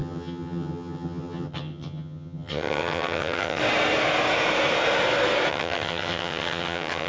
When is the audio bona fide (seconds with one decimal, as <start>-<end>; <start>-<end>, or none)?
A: 3.6-5.5

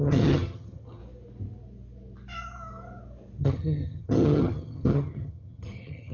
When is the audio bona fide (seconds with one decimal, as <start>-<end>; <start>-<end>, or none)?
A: 1.0-3.4

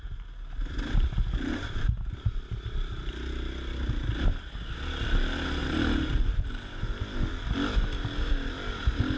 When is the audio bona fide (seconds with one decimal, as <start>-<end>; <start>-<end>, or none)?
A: 0.0-9.2

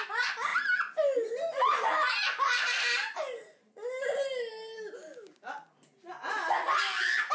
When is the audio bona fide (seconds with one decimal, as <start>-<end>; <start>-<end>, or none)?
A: 0.0-7.3

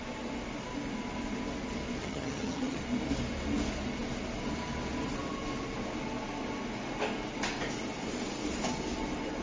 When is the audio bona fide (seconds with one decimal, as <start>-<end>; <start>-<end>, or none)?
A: 0.0-2.0; 2.8-9.4

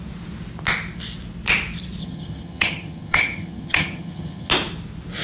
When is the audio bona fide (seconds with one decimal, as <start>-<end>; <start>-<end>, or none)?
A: 0.0-2.0; 4.5-5.2

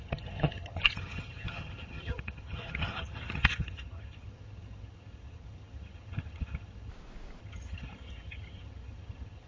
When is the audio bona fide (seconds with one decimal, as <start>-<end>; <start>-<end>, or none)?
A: 6.9-7.4

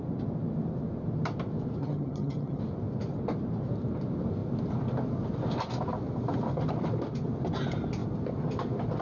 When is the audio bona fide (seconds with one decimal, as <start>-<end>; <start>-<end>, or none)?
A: 0.0-1.8; 2.6-9.0